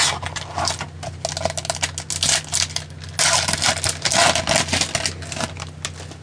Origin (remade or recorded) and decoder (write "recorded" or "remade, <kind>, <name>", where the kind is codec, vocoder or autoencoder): recorded